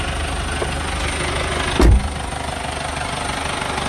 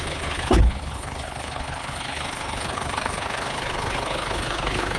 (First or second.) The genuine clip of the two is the first